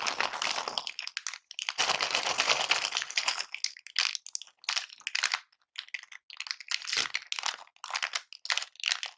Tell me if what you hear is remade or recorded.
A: recorded